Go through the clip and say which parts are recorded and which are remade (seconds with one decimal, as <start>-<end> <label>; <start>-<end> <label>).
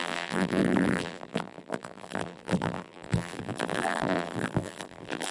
0.0-5.3 remade